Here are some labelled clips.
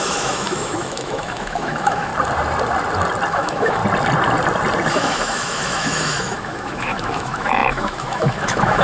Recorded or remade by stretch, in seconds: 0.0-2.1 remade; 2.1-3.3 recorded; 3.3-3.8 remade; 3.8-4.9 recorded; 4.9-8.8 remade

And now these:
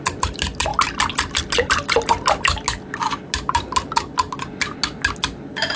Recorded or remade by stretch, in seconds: 0.0-5.8 recorded

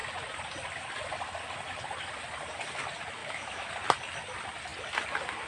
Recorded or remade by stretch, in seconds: 0.0-3.2 recorded; 3.2-3.7 remade; 3.7-5.5 recorded

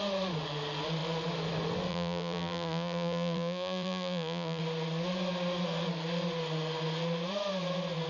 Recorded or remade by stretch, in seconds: 0.0-1.9 recorded; 1.9-4.6 remade; 4.6-8.1 recorded

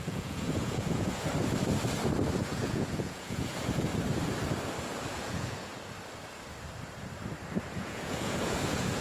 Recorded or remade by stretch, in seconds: 0.0-1.3 remade; 1.3-2.4 recorded; 2.4-3.9 remade; 3.9-5.1 recorded; 5.1-5.7 remade; 5.7-7.8 recorded; 7.8-9.0 remade

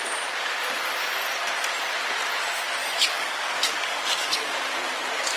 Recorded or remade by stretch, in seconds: 0.0-2.8 recorded; 2.8-4.6 remade; 4.6-5.4 recorded

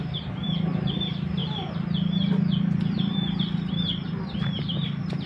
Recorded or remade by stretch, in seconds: 0.0-5.3 remade